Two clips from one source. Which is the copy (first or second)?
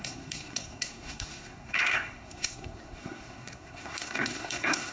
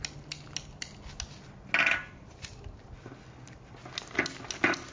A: first